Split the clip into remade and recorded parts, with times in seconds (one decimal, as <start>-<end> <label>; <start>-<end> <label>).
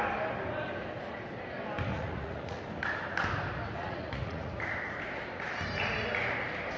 0.0-1.9 recorded; 1.9-2.6 remade; 2.6-3.8 recorded; 3.8-4.5 remade; 4.5-6.8 recorded